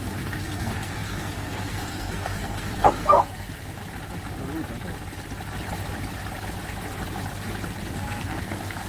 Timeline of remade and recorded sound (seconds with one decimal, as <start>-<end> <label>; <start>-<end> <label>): 0.0-3.8 remade; 3.8-7.9 recorded; 7.9-8.9 remade